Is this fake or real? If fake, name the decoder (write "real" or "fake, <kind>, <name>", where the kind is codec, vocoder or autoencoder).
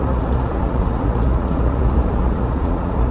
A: fake, vocoder, Vocos